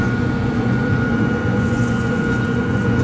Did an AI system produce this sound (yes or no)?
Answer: yes